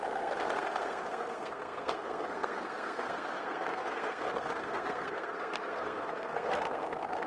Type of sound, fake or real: fake